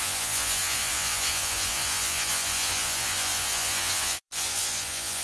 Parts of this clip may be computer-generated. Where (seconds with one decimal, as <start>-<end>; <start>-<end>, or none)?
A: 0.0-5.2